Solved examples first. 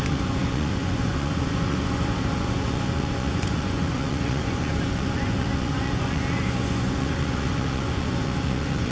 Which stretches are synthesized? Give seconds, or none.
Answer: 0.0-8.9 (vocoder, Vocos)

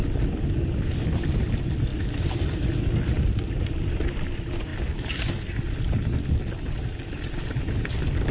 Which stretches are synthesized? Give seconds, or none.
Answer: 0.0-1.9 (vocoder, BigVGAN v2); 3.3-4.7; 6.3-8.3